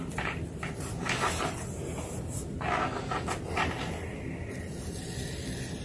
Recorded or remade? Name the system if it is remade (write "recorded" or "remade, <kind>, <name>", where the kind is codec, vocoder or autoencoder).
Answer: recorded